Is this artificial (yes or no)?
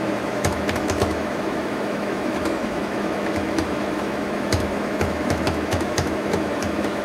yes